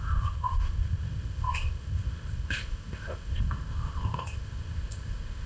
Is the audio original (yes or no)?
no